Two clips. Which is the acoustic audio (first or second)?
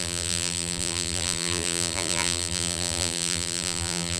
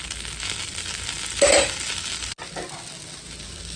second